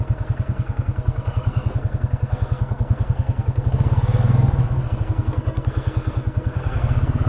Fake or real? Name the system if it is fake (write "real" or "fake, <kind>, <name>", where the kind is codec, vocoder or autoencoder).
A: fake, codec, SNAC